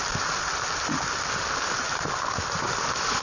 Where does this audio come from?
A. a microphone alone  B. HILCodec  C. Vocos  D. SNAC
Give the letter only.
A